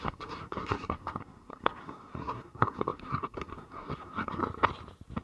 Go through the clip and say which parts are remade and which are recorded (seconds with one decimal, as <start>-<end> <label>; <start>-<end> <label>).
0.0-4.4 remade; 4.4-5.2 recorded